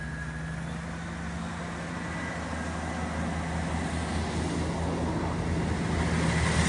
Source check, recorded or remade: recorded